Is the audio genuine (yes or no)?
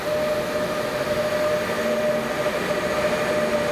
yes